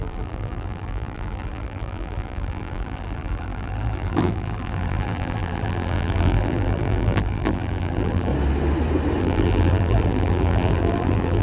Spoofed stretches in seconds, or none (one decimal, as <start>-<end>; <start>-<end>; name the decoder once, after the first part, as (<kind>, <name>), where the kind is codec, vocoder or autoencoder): 0.0-8.3 (vocoder, BigVGAN v2); 9.2-11.4